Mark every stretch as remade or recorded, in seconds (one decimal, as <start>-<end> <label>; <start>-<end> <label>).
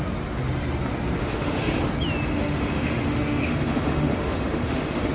0.0-1.2 recorded; 1.2-1.9 remade; 1.9-2.3 recorded; 2.3-5.1 remade